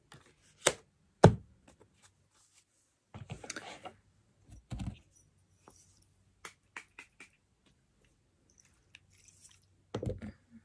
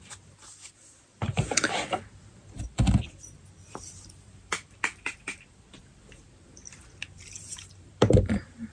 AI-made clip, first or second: second